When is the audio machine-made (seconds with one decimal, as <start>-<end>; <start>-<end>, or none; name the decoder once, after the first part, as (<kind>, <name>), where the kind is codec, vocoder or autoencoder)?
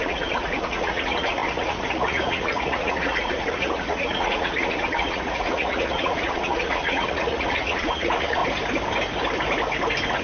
0.0-8.4 (vocoder, Vocos)